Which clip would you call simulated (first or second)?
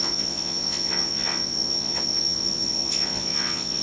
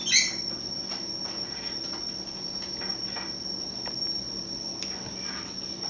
first